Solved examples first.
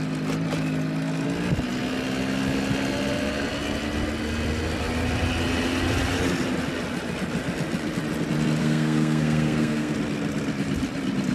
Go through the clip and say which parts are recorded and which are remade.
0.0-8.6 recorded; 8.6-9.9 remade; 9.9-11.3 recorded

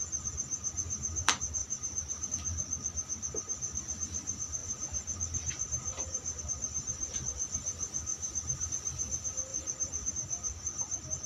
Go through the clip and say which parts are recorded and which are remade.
0.0-1.6 recorded; 1.6-2.3 remade; 2.3-4.6 recorded; 4.6-6.4 remade; 6.4-8.1 recorded; 8.1-8.7 remade; 8.7-9.5 recorded; 9.5-10.1 remade; 10.1-11.3 recorded